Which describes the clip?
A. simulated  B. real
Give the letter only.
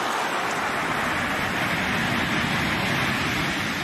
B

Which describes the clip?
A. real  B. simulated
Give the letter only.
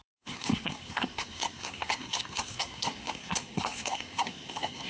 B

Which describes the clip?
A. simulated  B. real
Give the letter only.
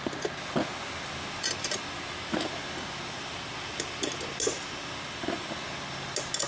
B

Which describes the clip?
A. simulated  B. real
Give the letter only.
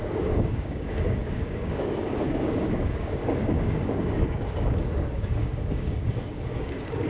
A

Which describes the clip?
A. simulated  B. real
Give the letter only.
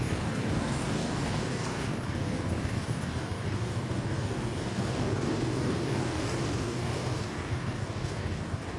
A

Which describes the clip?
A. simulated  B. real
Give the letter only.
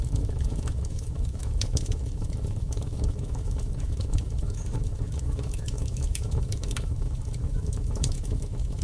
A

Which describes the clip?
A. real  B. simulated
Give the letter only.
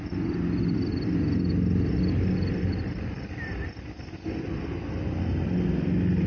A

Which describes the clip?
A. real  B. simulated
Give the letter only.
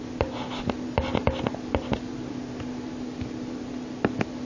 A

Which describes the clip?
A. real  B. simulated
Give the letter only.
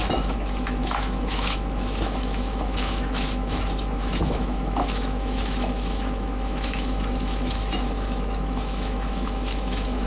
B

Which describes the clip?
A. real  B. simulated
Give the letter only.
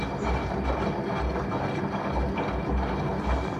A